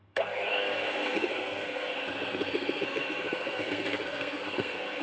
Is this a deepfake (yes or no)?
yes